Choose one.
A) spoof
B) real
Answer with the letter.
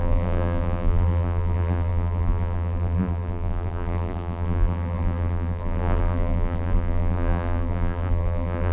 A